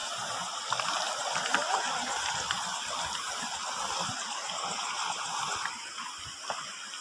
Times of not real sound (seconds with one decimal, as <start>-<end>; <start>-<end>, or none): none